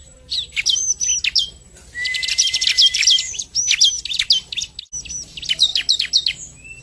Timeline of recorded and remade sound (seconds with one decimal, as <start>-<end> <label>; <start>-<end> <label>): 0.0-1.1 remade; 1.1-5.1 recorded; 5.1-5.7 remade; 5.7-6.8 recorded